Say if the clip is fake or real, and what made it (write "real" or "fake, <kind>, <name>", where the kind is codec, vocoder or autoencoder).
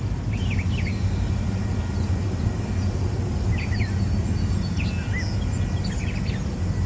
real